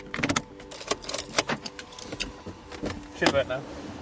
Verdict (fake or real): real